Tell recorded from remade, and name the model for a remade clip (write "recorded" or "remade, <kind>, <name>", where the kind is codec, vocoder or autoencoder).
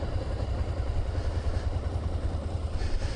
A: recorded